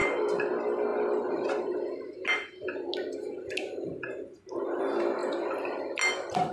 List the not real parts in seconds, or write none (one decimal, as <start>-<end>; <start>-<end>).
0.0-0.5; 5.2-5.8